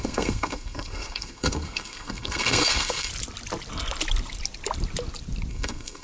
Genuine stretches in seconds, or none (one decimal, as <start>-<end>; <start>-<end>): 3.1-5.5